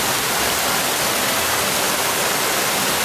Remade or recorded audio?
recorded